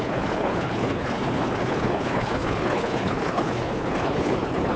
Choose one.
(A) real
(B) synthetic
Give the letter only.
B